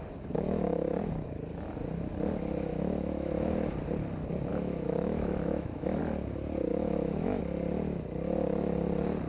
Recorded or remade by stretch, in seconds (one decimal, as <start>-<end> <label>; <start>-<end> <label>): 0.0-2.7 recorded; 2.7-3.3 remade; 3.3-4.5 recorded; 4.5-6.0 remade; 6.0-6.7 recorded; 6.7-7.4 remade; 7.4-9.3 recorded